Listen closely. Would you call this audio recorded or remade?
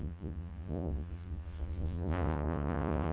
remade